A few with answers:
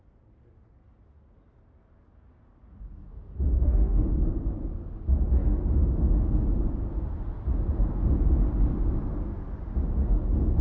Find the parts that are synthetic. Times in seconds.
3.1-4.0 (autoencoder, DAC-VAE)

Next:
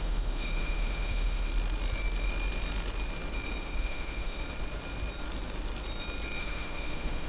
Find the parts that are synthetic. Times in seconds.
0.0-1.5 (autoencoder, DAC-VAE); 3.6-4.4; 6.4-7.3

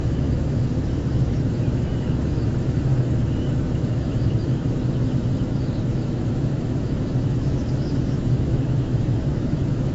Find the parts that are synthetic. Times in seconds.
0.0-2.9 (autoencoder, DAC-VAE); 3.6-9.9

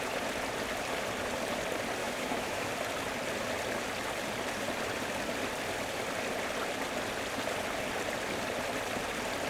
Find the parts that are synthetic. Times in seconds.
2.0-2.7 (autoencoder, DAC-VAE)

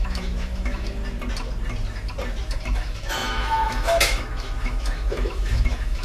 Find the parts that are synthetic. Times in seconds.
0.0-1.0 (autoencoder, DAC-VAE); 2.5-6.0

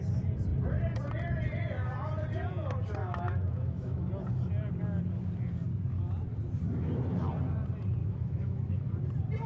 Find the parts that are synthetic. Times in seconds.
3.0-4.1 (autoencoder, DAC-VAE); 8.0-8.9

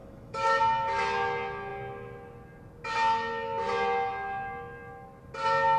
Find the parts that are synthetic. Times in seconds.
0.0-0.6 (autoencoder, DAC-VAE)